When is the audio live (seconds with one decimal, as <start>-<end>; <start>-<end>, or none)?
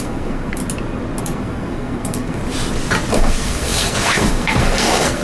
0.6-1.2; 2.4-3.1